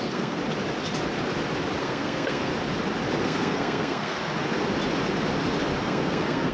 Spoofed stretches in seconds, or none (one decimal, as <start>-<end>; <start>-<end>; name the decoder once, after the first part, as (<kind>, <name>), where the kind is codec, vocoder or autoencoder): 0.0-0.4 (codec, SNAC); 1.8-2.5; 3.2-4.2; 5.8-6.5